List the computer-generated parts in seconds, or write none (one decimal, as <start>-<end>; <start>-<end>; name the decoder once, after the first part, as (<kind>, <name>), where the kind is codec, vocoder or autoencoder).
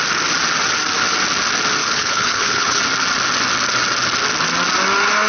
1.8-2.8 (codec, HILCodec)